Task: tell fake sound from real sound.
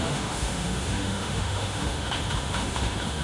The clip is fake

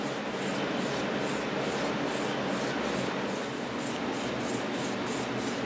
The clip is real